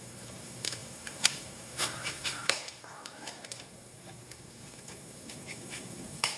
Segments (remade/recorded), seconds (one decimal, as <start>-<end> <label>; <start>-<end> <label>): 0.0-6.4 remade